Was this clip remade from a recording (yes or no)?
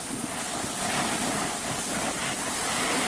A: no